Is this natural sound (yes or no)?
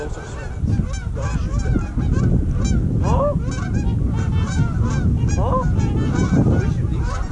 yes